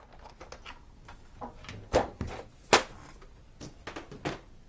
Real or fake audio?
real